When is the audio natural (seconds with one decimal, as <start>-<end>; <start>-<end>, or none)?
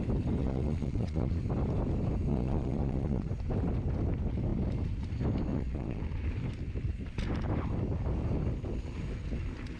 0.0-0.4; 1.4-2.3; 3.3-5.5; 6.0-9.8